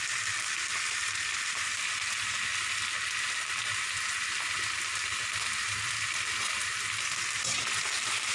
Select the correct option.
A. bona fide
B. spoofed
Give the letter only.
A